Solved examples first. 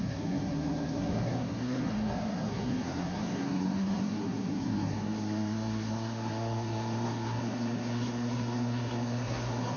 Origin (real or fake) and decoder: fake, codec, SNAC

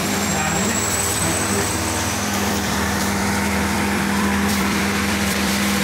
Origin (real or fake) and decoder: fake, vocoder, BigVGAN v2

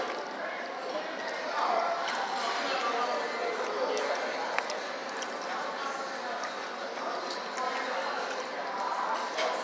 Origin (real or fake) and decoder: real